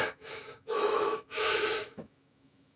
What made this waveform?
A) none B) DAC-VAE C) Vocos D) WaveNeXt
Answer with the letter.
B